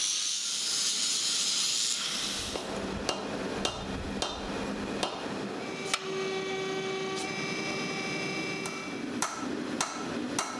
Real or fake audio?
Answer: real